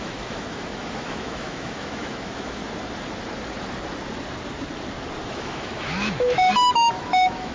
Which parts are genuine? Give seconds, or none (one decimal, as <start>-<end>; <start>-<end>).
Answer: 2.6-5.3